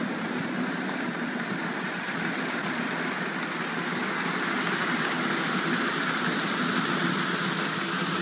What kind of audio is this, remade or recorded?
recorded